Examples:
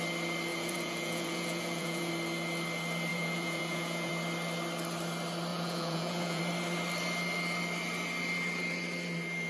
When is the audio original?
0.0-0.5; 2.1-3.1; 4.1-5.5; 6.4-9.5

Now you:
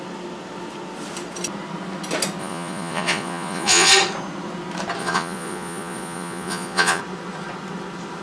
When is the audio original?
0.0-2.4; 3.9-5.0; 7.0-8.2